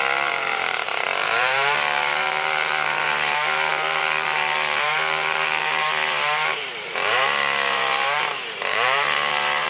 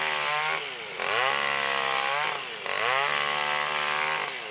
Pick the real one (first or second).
second